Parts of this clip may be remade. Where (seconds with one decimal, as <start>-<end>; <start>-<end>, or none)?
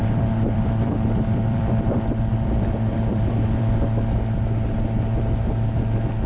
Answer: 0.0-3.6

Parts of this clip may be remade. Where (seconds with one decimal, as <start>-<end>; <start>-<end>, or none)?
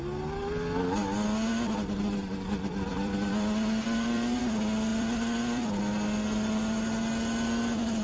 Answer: 2.9-4.4; 4.9-5.8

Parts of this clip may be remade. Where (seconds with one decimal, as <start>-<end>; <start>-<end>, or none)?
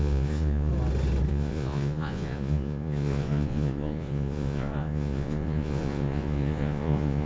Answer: 0.0-0.7; 1.3-7.3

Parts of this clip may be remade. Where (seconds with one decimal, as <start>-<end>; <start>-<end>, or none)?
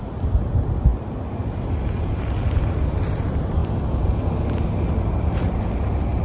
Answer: none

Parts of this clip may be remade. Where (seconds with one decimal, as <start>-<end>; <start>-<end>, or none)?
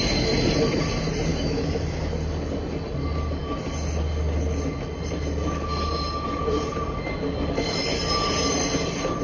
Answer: 1.3-2.0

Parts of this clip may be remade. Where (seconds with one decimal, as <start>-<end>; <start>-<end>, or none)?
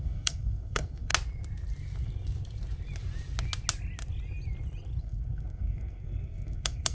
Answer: 0.0-1.1; 5.0-6.9